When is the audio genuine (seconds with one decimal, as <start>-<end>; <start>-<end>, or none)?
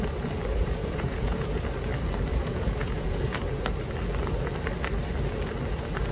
0.0-0.5; 1.6-2.3; 3.4-6.1